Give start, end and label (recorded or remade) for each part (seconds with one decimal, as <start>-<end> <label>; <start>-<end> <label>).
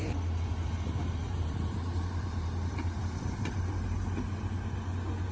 0.0-1.2 recorded; 1.2-3.7 remade; 3.7-5.3 recorded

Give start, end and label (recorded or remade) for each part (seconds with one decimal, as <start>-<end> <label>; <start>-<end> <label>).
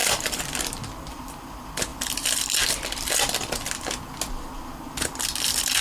0.0-1.3 remade; 1.3-1.9 recorded; 1.9-3.9 remade; 3.9-5.8 recorded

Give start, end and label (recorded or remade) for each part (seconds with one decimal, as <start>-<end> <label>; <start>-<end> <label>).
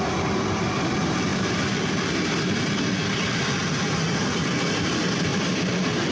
0.0-3.0 remade; 3.0-4.8 recorded; 4.8-6.1 remade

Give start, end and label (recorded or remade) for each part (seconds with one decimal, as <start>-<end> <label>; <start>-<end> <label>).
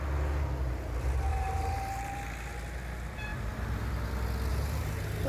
0.0-1.3 recorded; 1.3-2.2 remade; 2.2-3.3 recorded; 3.3-3.9 remade; 3.9-4.5 recorded; 4.5-5.3 remade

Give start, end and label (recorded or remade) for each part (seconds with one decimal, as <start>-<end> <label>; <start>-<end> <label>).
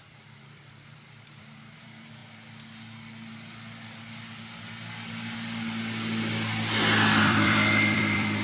0.0-2.2 remade; 2.2-7.2 recorded; 7.2-8.4 remade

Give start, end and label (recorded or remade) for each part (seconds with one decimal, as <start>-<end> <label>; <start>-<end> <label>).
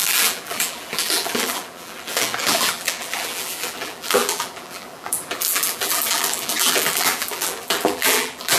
0.0-8.6 remade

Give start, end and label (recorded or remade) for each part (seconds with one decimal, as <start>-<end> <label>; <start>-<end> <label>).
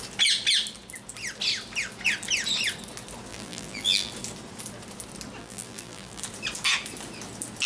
0.0-3.3 recorded; 3.3-4.1 remade; 4.1-5.4 recorded; 5.4-6.2 remade; 6.2-7.7 recorded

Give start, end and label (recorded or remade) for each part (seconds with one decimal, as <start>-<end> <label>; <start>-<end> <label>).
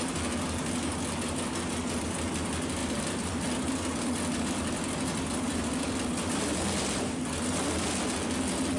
0.0-2.8 recorded; 2.8-7.9 remade; 7.9-8.8 recorded